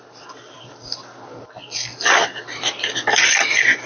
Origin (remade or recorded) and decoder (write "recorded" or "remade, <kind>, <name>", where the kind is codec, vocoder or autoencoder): recorded